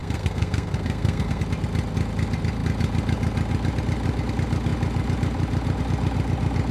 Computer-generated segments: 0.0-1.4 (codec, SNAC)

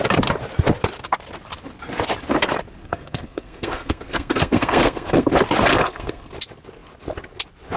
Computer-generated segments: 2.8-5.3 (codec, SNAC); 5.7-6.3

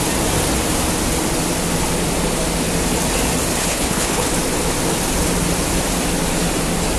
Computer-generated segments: 3.6-4.3 (codec, HILCodec)

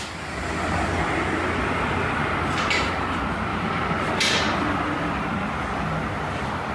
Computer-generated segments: 3.5-4.8 (vocoder, BigVGAN v2)